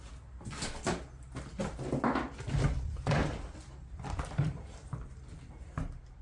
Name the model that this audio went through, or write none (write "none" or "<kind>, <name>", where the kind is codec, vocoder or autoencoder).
none